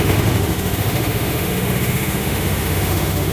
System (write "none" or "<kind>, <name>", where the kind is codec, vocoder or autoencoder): autoencoder, DAC-VAE